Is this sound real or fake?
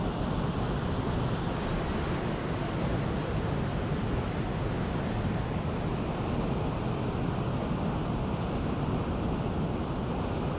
real